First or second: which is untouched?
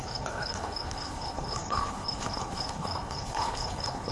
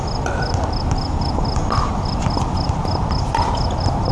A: second